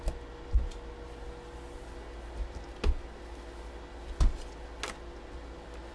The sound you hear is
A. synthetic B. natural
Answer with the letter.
B